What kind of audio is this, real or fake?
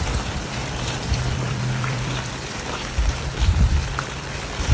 fake